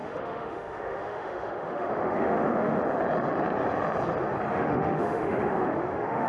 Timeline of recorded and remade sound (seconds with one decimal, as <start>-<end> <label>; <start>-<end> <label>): 0.0-2.8 remade; 2.8-4.5 recorded; 4.5-6.3 remade